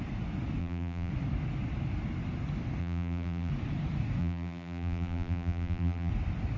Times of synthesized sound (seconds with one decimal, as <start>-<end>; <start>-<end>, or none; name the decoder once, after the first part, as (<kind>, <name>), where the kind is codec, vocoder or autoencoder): 0.6-1.1 (vocoder, BigVGAN v2); 2.8-3.5; 4.2-6.1